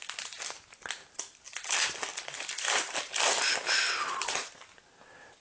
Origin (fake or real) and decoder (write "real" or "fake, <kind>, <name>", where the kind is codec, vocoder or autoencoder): real